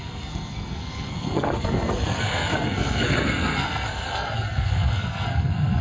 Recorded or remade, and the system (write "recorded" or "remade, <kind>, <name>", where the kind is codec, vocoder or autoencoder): remade, codec, SNAC